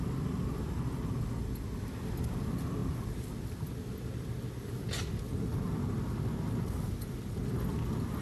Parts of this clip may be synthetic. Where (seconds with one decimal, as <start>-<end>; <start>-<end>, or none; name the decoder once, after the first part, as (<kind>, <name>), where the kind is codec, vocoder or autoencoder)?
none

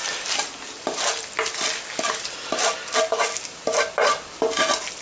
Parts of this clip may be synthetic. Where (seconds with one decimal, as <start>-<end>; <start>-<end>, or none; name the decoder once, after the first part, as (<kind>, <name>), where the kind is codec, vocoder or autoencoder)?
none

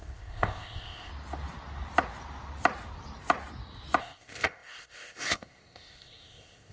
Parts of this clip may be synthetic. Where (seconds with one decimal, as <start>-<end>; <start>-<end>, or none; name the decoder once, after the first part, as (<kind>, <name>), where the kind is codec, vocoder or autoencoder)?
0.0-1.1 (codec, ZipCodec); 4.0-6.7

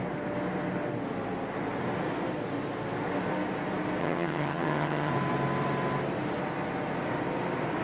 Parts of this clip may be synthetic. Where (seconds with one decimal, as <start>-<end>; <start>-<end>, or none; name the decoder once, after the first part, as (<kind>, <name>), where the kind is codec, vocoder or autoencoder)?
4.0-5.1 (vocoder, HiFi-GAN)

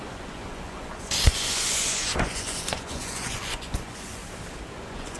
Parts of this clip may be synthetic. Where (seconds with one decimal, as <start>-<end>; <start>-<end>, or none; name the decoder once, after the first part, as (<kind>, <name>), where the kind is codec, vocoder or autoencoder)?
0.0-4.2 (vocoder, Vocos); 4.7-5.2

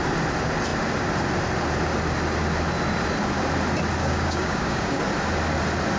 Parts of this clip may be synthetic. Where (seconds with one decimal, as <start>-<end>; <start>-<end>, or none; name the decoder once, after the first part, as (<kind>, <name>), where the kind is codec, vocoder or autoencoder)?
4.0-5.0 (codec, DAC)

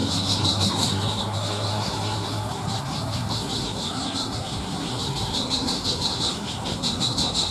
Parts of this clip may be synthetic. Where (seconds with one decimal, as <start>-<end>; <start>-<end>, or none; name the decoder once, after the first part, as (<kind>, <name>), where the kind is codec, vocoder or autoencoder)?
0.0-7.5 (codec, SNAC)